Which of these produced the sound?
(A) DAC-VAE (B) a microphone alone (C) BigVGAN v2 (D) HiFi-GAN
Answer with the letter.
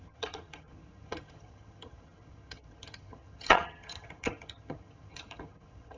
D